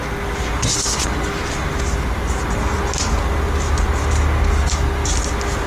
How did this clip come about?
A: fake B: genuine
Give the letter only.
B